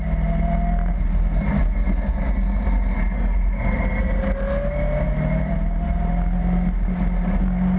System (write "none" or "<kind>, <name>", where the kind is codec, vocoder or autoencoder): none